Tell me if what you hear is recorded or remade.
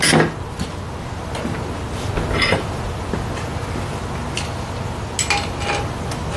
recorded